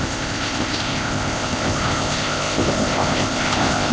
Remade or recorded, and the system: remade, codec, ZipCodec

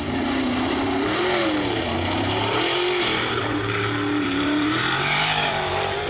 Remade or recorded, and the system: remade, vocoder, BigVGAN v2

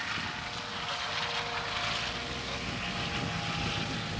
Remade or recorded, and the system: recorded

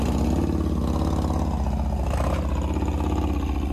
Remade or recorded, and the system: recorded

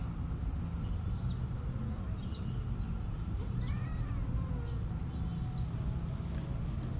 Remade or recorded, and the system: recorded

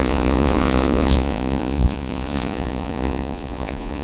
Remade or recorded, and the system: remade, vocoder, Vocos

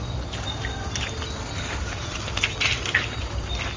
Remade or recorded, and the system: recorded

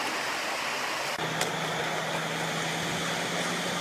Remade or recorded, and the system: recorded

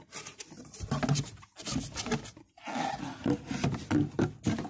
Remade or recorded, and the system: recorded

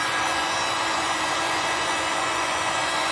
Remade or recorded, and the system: remade, vocoder, Vocos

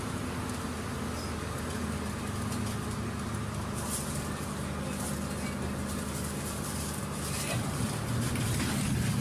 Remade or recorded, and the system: recorded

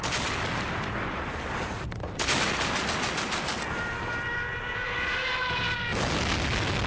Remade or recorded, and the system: recorded